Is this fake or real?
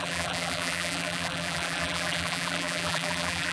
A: fake